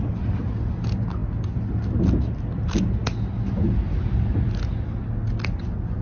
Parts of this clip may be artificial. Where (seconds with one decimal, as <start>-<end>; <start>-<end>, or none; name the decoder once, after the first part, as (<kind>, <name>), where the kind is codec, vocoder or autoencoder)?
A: none